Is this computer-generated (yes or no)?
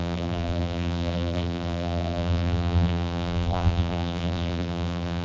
yes